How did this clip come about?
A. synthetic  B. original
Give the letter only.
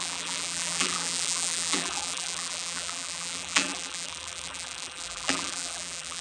A